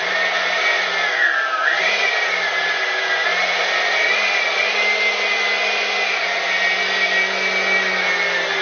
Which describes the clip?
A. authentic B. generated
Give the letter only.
A